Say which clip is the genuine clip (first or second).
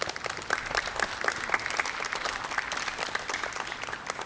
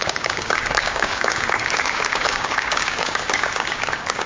first